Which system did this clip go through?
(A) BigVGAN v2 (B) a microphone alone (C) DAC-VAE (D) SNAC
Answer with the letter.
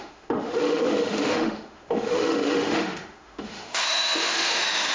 C